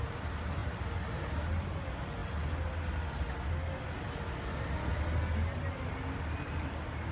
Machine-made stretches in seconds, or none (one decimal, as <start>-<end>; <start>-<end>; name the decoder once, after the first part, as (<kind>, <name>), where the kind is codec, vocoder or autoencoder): none